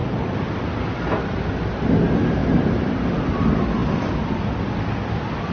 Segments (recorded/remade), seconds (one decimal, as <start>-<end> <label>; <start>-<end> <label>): 0.0-2.4 recorded; 2.4-3.3 remade; 3.3-5.5 recorded